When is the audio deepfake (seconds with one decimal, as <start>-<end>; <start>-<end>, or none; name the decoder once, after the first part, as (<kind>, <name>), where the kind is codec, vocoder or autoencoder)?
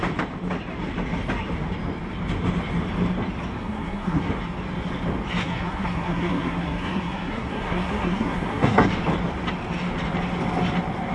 3.6-4.3 (codec, SNAC); 5.4-8.9